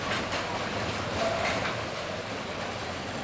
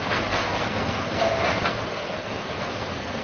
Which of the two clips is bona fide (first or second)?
first